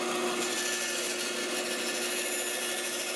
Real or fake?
real